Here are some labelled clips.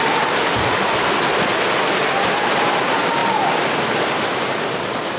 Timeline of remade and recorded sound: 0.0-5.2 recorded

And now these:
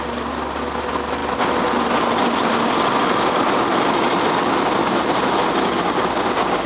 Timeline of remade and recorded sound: 0.0-6.7 recorded

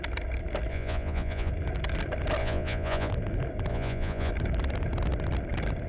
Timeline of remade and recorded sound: 0.0-0.7 recorded; 0.7-1.5 remade; 1.5-2.4 recorded; 2.4-3.1 remade; 3.1-3.7 recorded; 3.7-4.3 remade; 4.3-5.9 recorded

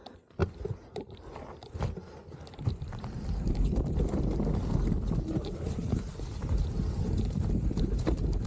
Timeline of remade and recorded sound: 0.0-0.4 recorded; 0.4-1.4 remade; 1.4-2.2 recorded; 2.2-7.2 remade; 7.2-8.5 recorded

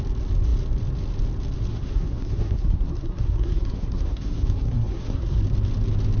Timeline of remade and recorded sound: 0.0-1.7 recorded; 1.7-5.4 remade; 5.4-6.2 recorded

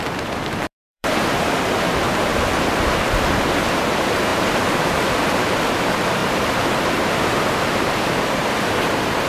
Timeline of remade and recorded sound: 0.0-2.3 remade; 2.3-2.9 recorded; 2.9-6.2 remade; 6.2-7.1 recorded; 7.1-9.3 remade